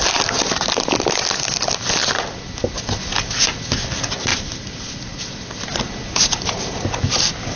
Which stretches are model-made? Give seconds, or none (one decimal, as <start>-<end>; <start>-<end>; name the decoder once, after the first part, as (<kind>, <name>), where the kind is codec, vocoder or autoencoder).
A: 4.3-5.7 (vocoder, BigVGAN v2)